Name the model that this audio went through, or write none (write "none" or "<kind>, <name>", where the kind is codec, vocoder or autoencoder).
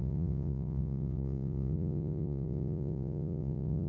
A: vocoder, Vocos